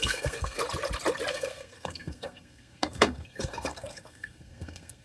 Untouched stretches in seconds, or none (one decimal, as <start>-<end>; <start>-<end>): 0.6-1.3